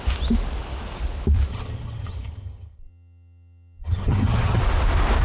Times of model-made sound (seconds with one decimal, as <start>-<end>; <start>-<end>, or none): 1.5-4.6